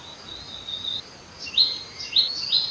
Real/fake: real